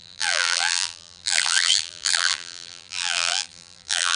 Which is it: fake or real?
fake